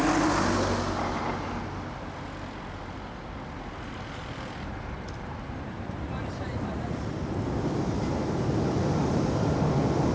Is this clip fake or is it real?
real